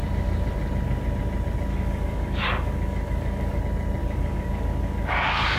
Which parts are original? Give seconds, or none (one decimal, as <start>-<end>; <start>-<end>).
0.0-1.7; 3.6-4.0